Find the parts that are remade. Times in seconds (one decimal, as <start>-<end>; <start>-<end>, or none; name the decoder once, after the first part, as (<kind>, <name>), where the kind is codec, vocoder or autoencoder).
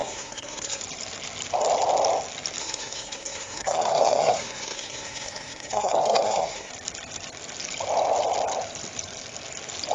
0.0-0.8 (codec, SNAC); 2.6-6.7